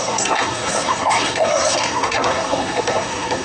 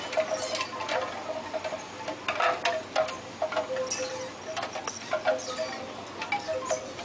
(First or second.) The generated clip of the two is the first